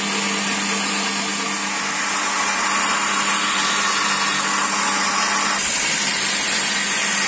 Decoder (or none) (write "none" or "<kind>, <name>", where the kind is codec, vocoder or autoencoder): none